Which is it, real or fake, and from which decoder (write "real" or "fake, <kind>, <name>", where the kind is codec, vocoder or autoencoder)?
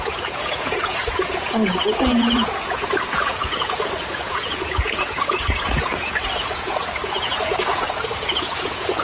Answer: fake, vocoder, Vocos